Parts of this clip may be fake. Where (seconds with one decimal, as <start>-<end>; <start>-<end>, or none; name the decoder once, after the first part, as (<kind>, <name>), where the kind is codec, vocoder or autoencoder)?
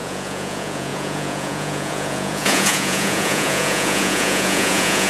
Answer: 0.0-5.1 (vocoder, Vocos)